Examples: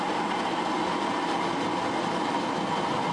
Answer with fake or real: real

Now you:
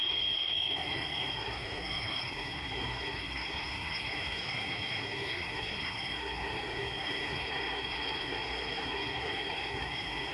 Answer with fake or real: fake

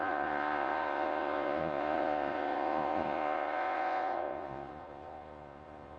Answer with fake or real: fake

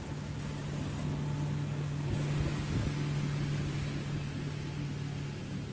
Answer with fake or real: real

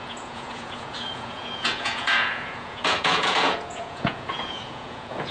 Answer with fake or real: fake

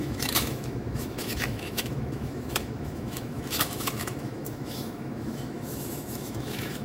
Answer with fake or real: fake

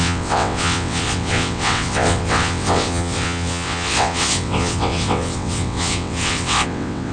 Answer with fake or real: fake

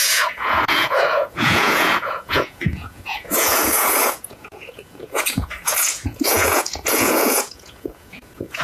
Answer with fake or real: fake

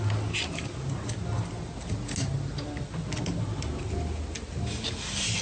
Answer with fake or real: real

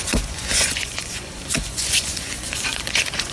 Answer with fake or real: fake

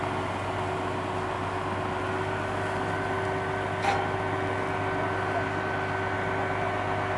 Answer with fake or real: real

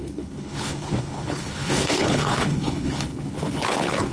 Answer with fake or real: fake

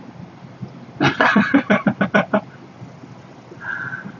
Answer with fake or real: real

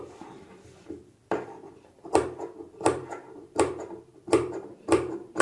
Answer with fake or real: fake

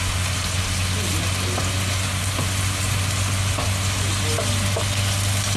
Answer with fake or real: real